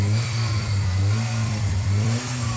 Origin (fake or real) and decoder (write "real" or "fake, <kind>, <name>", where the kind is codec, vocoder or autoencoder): fake, vocoder, BigVGAN v2